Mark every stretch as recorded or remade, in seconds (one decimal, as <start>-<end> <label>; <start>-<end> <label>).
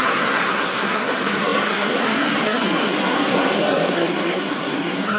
0.0-5.2 remade